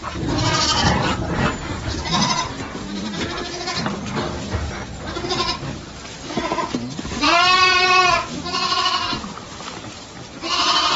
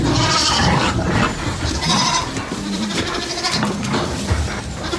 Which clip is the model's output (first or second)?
second